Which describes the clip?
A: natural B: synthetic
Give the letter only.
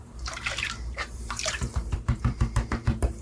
B